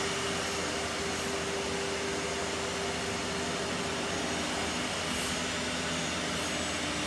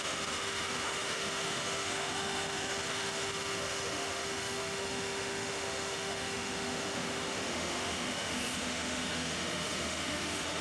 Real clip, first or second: first